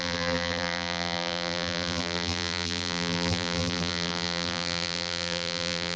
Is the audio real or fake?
fake